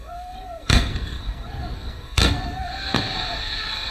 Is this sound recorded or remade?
remade